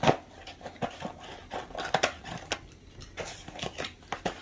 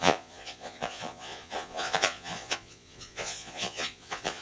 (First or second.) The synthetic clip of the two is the second